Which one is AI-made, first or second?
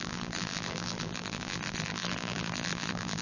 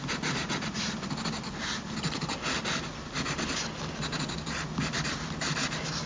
first